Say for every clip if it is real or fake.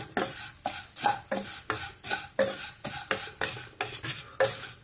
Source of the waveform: real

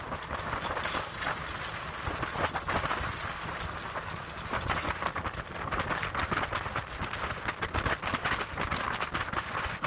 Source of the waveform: fake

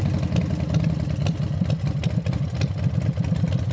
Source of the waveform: real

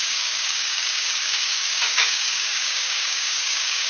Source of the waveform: fake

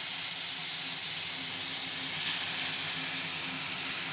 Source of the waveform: real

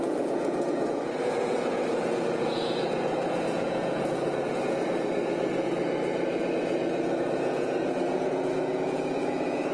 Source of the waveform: fake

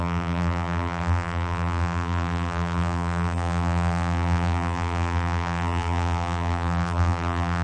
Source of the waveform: fake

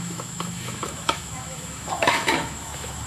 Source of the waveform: fake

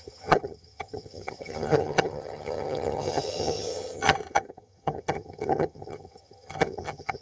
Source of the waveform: fake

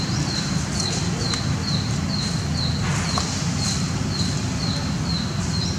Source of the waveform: real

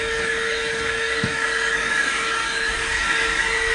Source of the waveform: fake